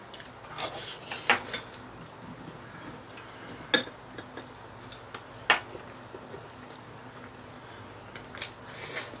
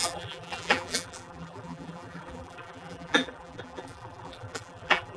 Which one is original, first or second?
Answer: first